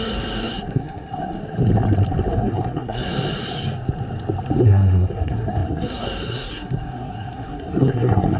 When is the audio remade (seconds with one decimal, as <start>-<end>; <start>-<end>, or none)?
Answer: 0.0-1.4; 2.3-3.1; 4.6-8.4